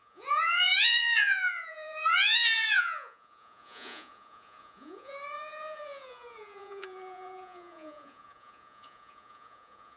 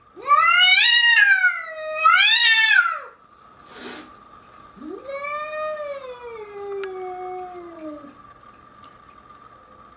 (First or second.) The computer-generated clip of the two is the first